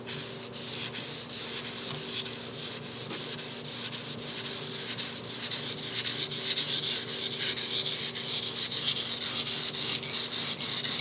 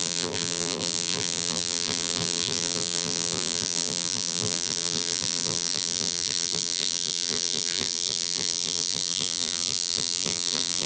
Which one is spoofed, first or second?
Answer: second